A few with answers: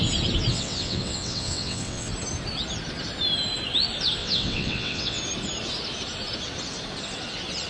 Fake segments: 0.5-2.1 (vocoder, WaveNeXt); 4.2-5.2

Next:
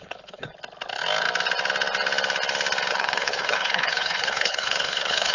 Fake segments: 0.0-0.5 (codec, HILCodec); 2.9-5.3